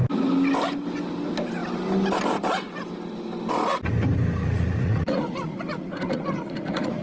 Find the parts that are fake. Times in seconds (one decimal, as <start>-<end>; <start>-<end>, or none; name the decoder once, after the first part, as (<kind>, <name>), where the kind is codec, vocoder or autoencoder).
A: 4.4-7.0 (vocoder, Vocos)